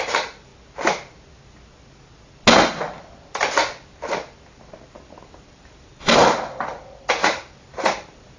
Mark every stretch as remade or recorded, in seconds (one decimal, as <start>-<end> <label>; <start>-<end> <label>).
0.0-0.5 remade; 0.5-5.2 recorded; 5.2-6.2 remade; 6.2-7.1 recorded; 7.1-8.4 remade